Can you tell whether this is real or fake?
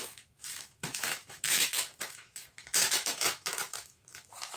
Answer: fake